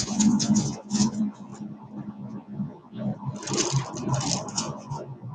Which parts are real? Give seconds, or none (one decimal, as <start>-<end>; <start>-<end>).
1.5-2.1; 3.1-4.5